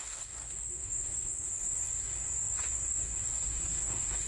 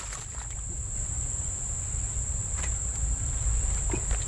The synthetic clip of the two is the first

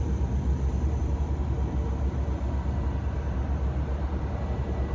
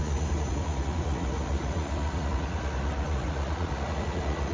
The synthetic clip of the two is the second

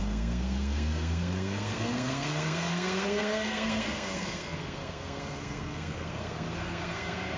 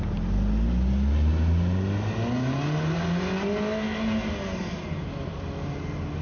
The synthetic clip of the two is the first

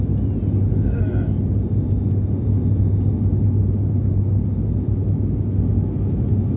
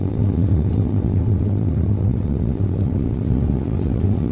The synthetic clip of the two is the second